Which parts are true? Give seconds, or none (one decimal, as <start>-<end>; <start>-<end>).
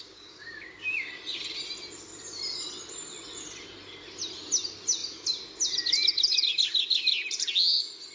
1.1-8.1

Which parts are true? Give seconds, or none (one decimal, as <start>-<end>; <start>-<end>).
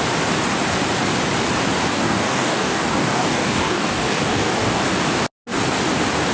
0.0-1.9; 4.8-6.3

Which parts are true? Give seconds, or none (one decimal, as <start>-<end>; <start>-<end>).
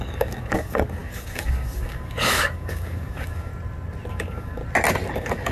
3.5-4.1; 4.6-5.1